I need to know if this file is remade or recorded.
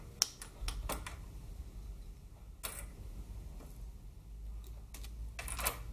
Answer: recorded